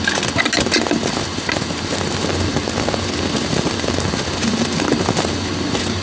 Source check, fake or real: real